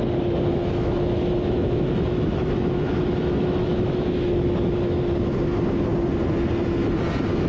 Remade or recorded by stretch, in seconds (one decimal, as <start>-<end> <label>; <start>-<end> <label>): 0.0-0.5 recorded; 0.5-5.0 remade; 5.0-7.5 recorded

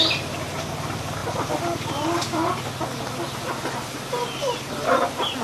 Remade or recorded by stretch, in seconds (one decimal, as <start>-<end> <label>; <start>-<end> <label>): 0.0-5.4 recorded

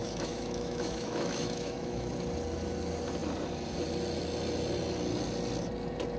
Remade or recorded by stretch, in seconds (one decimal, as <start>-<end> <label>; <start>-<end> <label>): 0.0-2.1 remade; 2.1-6.2 recorded